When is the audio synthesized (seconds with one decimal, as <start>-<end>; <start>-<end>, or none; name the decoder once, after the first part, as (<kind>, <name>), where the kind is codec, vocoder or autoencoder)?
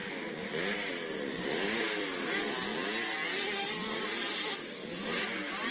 0.0-2.7 (vocoder, BigVGAN v2); 4.5-5.7